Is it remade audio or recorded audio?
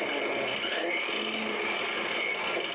recorded